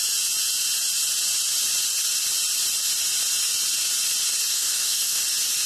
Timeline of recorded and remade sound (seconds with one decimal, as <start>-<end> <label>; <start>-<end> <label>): 0.0-4.5 recorded; 4.5-5.2 remade; 5.2-5.7 recorded